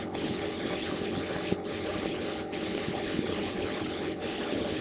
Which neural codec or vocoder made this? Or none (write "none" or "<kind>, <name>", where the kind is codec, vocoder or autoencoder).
codec, HILCodec